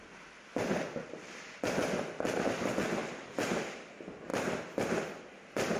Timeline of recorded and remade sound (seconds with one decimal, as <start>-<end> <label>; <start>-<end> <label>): 0.0-5.8 recorded